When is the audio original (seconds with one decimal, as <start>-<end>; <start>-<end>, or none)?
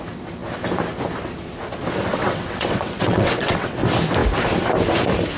0.0-2.1; 3.7-5.4